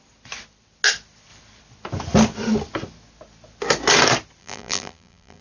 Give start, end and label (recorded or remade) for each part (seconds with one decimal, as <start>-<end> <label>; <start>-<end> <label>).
0.0-4.4 recorded; 4.4-5.4 remade